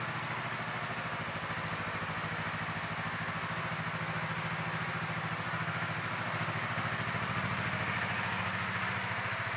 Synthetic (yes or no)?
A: no